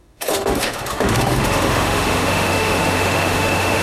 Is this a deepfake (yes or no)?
yes